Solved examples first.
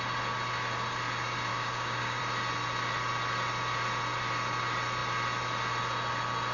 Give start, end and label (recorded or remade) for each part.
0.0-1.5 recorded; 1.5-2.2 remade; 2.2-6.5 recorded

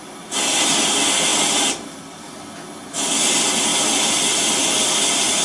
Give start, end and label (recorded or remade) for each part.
0.0-1.3 recorded; 1.3-2.3 remade; 2.3-3.7 recorded; 3.7-5.0 remade; 5.0-5.4 recorded

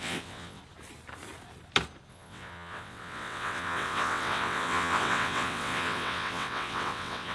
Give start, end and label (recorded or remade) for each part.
0.0-0.6 remade; 0.6-2.1 recorded; 2.1-7.3 remade